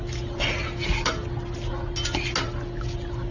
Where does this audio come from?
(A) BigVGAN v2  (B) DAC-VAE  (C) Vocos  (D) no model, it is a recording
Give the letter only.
D